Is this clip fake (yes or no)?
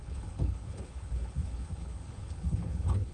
yes